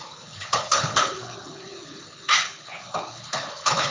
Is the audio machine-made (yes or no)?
yes